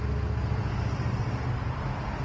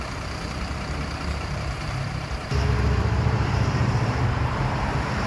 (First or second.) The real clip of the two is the first